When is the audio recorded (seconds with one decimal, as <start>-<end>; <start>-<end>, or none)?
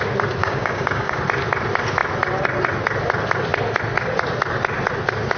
0.0-0.4; 1.2-5.4